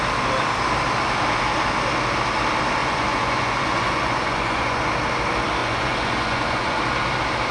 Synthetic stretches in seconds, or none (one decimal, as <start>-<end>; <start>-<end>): 2.8-4.9; 5.6-6.8